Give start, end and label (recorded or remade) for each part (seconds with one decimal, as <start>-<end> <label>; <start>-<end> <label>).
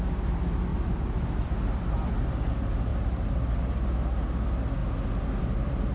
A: 0.0-0.7 recorded; 0.7-2.5 remade; 2.5-5.9 recorded